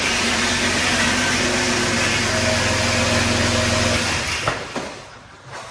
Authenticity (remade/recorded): recorded